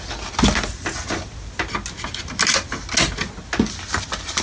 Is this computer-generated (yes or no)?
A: no